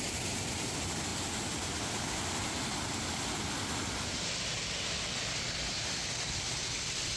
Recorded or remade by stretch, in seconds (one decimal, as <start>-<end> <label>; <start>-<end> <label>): 0.0-7.2 recorded